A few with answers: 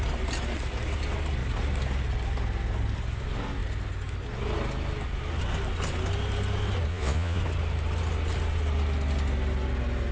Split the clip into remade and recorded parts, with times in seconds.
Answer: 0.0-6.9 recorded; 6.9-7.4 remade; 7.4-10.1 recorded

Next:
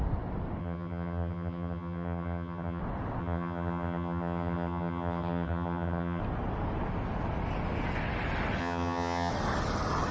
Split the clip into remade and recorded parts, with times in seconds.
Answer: 0.0-0.6 recorded; 0.6-2.8 remade; 2.8-3.2 recorded; 3.2-6.2 remade; 6.2-8.6 recorded; 8.6-9.3 remade; 9.3-10.1 recorded

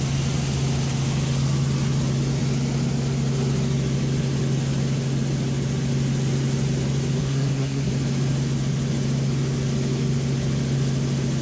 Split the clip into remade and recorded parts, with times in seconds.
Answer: 0.0-7.2 recorded; 7.2-7.9 remade; 7.9-11.4 recorded